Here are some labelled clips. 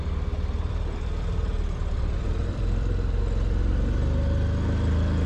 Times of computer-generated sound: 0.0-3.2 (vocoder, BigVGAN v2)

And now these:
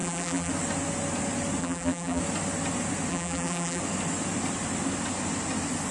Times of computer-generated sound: 0.0-0.5 (vocoder, BigVGAN v2); 1.6-2.2; 3.1-3.8

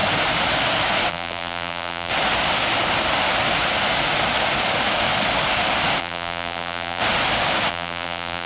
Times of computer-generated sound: 1.1-2.1 (vocoder, BigVGAN v2); 6.0-7.0; 7.7-8.5

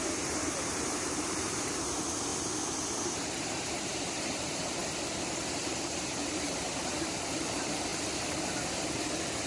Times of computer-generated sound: 0.0-2.3 (vocoder, BigVGAN v2); 3.0-4.8; 5.6-7.9

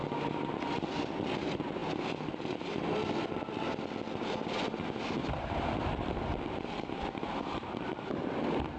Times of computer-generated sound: 5.2-8.2 (vocoder, BigVGAN v2)

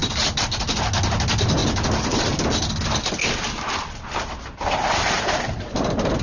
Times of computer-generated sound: 0.0-0.8 (vocoder, BigVGAN v2); 1.6-2.7

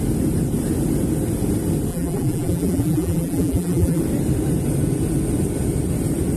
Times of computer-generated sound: 1.9-4.0 (vocoder, BigVGAN v2)

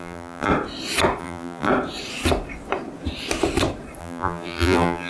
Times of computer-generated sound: 0.0-0.5 (vocoder, BigVGAN v2); 1.2-1.7; 4.0-5.1